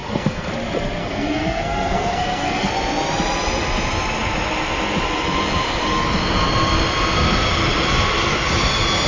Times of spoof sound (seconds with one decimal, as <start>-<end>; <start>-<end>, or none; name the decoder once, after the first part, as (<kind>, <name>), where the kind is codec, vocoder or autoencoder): 0.0-0.5 (codec, SNAC); 1.0-2.7